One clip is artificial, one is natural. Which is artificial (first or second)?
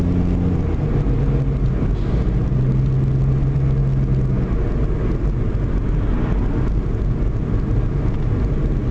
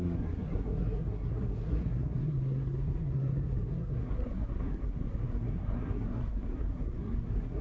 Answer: second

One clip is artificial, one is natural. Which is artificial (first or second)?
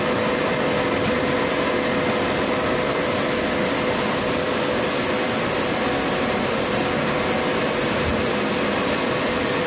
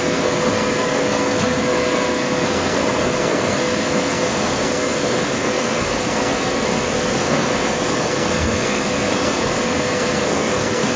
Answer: second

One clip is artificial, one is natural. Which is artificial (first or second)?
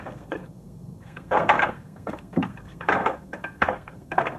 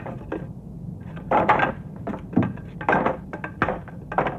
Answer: first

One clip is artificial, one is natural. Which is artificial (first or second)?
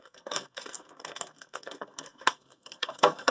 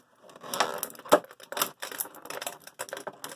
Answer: first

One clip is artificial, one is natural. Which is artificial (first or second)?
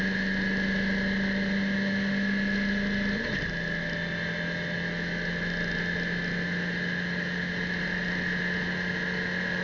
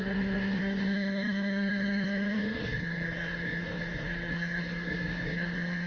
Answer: second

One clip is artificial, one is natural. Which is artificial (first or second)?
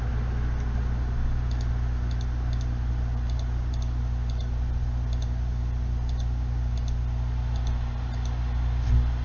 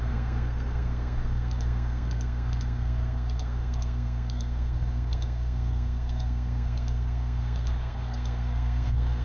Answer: second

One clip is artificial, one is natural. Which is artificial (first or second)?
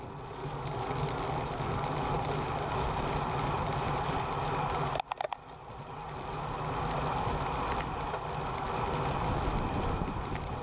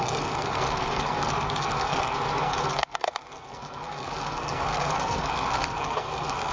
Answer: second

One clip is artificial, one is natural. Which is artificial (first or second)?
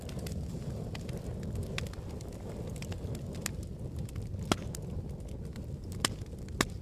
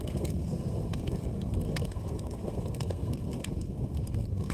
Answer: second